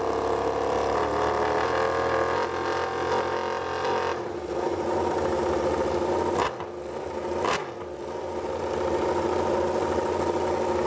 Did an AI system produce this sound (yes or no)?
no